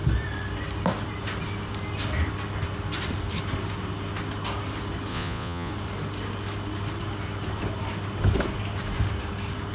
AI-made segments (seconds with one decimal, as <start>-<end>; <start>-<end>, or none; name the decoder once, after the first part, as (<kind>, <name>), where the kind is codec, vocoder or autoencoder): 5.1-5.7 (vocoder, Vocos)